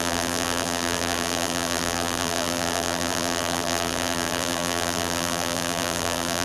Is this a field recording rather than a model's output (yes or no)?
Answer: no